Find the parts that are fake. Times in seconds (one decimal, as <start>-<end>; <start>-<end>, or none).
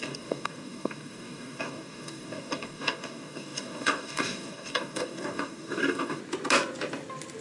0.0-6.2